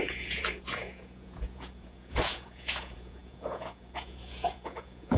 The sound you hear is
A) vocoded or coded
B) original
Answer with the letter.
A